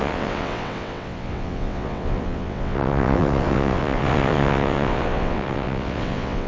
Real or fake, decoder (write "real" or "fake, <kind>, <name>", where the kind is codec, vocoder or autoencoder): fake, vocoder, WaveNeXt